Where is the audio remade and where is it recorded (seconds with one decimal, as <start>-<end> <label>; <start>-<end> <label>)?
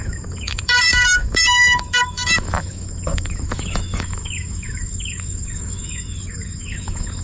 0.0-7.2 remade